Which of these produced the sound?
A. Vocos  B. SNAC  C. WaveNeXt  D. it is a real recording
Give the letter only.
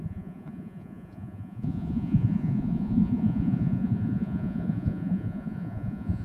A